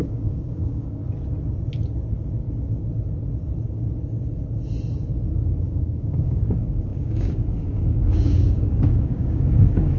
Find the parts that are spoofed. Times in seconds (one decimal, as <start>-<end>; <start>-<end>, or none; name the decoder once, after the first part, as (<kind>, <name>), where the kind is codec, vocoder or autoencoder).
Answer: 0.0-1.0 (codec, DAC); 5.6-10.0